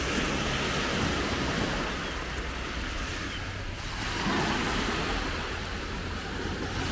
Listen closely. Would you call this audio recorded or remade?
recorded